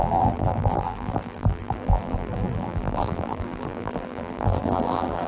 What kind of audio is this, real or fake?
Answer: fake